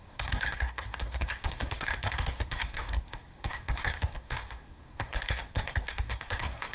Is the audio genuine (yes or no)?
no